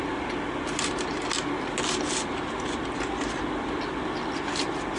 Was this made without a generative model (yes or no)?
yes